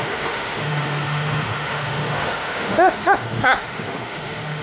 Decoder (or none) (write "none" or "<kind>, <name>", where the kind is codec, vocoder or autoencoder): autoencoder, DAC-VAE